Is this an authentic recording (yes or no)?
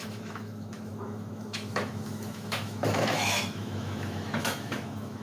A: no